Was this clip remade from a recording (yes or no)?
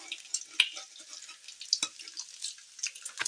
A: no